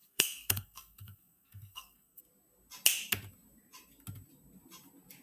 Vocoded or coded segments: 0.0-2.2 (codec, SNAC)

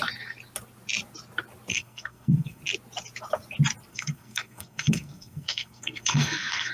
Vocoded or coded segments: 1.7-2.6 (codec, SNAC); 3.9-6.7

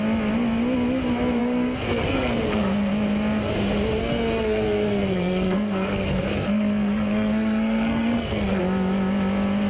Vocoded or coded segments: 1.4-2.9 (codec, SNAC); 4.0-8.6